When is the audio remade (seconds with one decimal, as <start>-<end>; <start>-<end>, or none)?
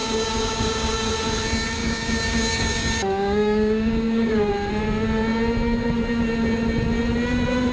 0.0-1.1; 1.8-4.5